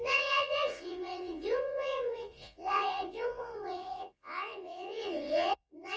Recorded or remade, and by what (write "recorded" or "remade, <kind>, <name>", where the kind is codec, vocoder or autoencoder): remade, vocoder, Vocos